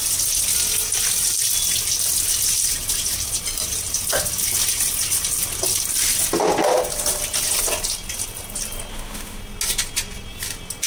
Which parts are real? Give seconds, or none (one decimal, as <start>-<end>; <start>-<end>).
0.0-8.9; 9.4-10.9